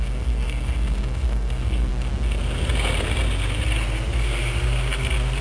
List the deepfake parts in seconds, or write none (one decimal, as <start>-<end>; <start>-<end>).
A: 0.0-1.9